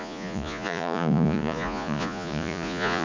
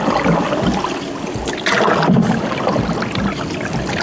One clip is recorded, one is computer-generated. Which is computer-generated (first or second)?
first